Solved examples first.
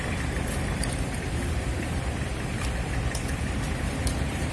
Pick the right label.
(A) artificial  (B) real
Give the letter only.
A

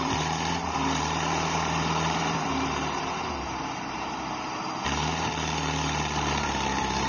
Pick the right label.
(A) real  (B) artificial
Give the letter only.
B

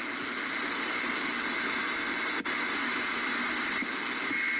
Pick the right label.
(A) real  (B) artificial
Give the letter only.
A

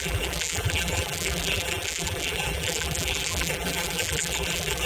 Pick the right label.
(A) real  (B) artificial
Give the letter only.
B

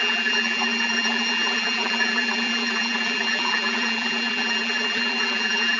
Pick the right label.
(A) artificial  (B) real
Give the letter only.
A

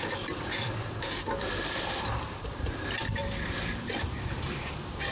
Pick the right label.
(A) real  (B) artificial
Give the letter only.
B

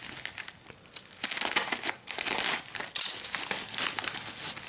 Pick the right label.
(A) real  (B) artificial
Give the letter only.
A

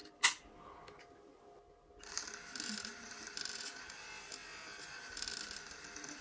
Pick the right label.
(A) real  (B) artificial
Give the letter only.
A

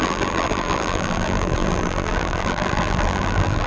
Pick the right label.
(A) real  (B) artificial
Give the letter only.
B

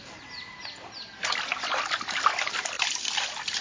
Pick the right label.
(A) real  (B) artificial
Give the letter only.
A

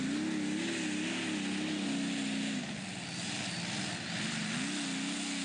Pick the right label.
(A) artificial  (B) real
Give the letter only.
B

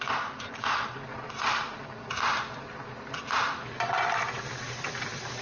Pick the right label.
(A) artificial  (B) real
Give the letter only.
A